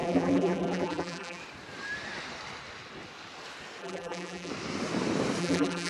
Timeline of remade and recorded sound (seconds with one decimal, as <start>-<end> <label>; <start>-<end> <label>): 0.0-1.4 remade; 1.4-3.8 recorded; 3.8-4.5 remade; 4.5-5.4 recorded; 5.4-5.9 remade